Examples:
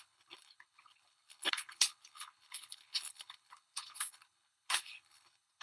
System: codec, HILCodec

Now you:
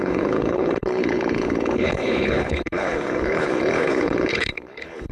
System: codec, HILCodec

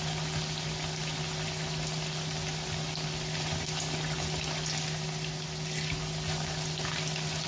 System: none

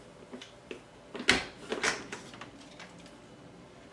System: none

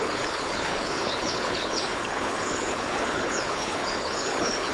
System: codec, HILCodec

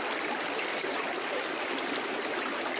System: none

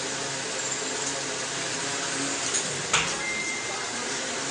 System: none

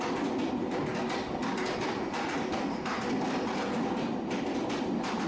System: none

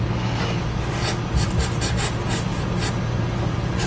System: none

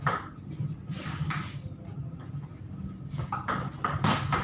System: none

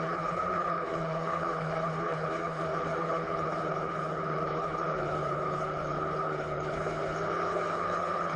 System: codec, HILCodec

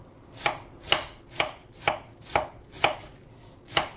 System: none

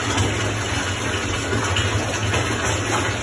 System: none